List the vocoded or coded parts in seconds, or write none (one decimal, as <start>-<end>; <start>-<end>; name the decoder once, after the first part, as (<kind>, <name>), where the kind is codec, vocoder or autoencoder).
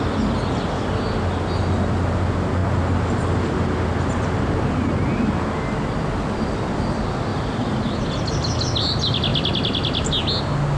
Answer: none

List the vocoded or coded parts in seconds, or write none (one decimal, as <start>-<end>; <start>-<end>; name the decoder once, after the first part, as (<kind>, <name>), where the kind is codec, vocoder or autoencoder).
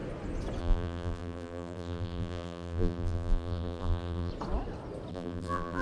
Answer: 0.6-4.3 (vocoder, BigVGAN v2); 5.1-5.8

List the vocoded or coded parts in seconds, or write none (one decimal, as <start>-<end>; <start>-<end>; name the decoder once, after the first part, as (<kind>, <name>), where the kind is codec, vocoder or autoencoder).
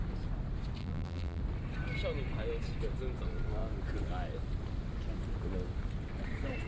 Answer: 0.8-1.4 (vocoder, BigVGAN v2)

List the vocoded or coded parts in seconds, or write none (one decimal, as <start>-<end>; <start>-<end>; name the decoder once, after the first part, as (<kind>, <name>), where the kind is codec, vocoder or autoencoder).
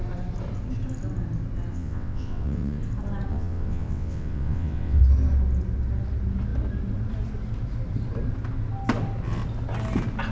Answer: 1.7-2.8 (vocoder, WaveNeXt); 3.3-5.0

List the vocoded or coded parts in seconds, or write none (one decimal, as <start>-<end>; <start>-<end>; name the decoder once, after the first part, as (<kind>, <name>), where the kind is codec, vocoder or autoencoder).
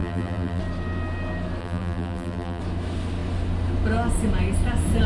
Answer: 0.0-0.6 (vocoder, BigVGAN v2); 1.6-2.6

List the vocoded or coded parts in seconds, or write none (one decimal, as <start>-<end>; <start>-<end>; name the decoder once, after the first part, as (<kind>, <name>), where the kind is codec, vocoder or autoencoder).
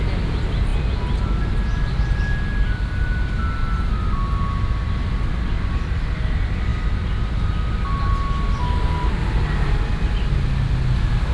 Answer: none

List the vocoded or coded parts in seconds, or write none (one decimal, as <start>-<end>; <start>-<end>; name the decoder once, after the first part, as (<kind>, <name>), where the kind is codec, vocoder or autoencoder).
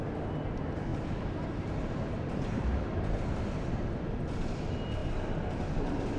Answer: 0.9-4.6 (vocoder, BigVGAN v2); 5.0-5.6